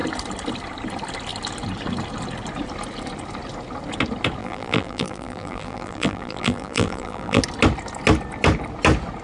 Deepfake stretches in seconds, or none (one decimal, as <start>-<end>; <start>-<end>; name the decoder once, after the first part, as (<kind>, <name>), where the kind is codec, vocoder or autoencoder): 4.4-7.4 (vocoder, BigVGAN v2)